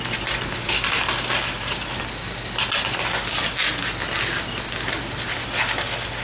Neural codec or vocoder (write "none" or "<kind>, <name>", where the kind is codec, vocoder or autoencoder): none